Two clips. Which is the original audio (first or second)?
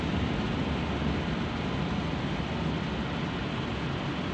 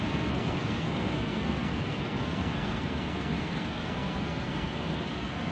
first